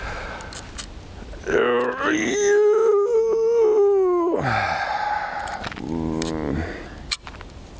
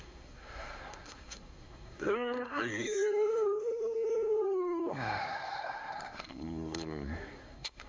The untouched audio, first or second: first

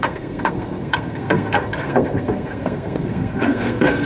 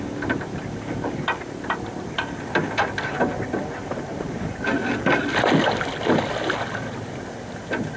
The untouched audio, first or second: second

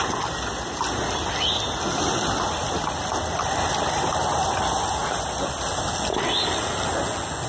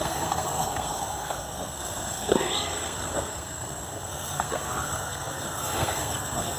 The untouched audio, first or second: first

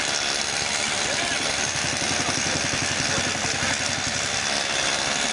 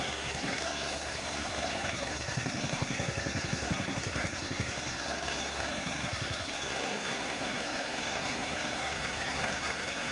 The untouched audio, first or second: first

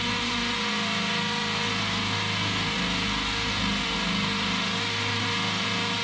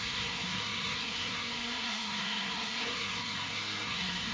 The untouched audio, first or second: first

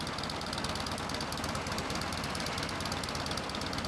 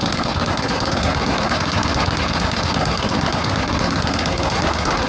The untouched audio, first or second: first